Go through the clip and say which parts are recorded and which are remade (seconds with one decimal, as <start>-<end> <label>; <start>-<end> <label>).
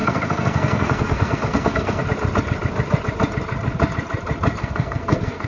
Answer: 0.0-2.0 remade; 2.0-4.6 recorded; 4.6-5.5 remade